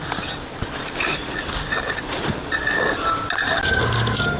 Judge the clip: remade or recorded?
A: recorded